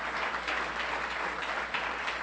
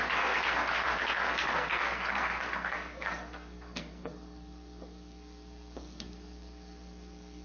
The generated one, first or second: second